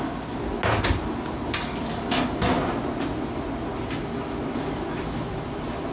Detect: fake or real real